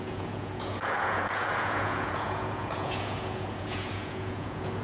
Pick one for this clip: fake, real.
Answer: fake